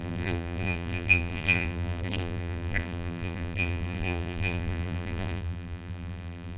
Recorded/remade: remade